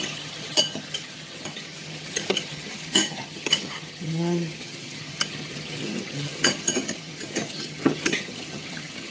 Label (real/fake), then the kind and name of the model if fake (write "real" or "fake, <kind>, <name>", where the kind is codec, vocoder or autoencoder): fake, vocoder, HiFi-GAN